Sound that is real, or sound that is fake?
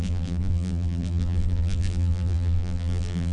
fake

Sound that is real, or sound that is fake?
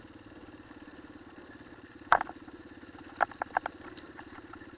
real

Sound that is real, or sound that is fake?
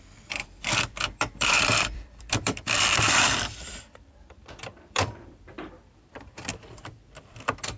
fake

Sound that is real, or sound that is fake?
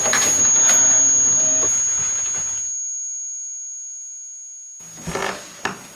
real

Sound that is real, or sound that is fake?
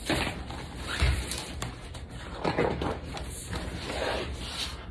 fake